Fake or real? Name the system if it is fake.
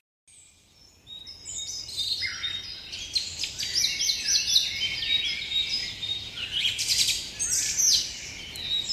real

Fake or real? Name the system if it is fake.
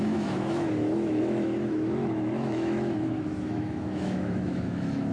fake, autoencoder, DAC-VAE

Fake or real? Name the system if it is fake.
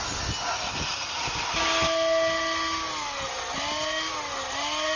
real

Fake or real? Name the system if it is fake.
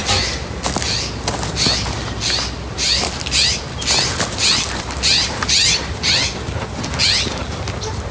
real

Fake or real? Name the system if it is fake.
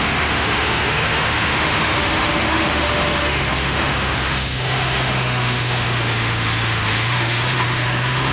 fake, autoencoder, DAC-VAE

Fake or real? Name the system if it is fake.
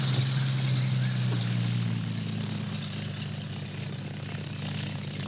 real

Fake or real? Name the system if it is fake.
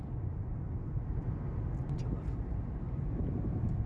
real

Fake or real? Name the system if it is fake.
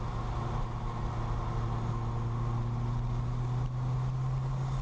real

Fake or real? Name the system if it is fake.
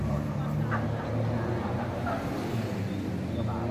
real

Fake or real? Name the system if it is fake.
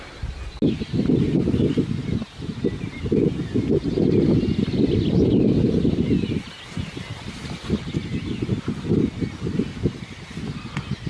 real